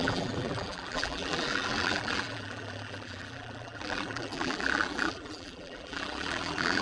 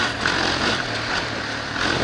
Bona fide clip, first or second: second